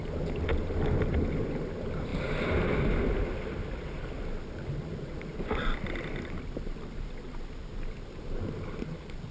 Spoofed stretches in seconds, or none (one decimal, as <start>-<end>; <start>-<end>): none